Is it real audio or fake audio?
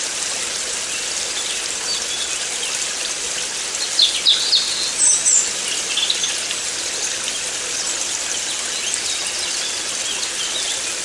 real